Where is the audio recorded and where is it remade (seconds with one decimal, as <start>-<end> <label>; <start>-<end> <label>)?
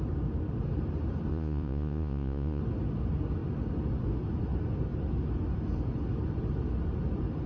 0.0-1.3 recorded; 1.3-2.6 remade; 2.6-7.5 recorded